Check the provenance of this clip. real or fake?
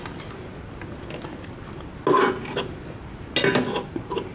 real